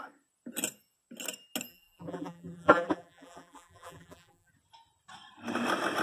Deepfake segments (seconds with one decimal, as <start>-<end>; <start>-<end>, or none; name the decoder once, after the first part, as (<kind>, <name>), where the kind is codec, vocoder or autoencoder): 1.7-4.5 (vocoder, BigVGAN v2)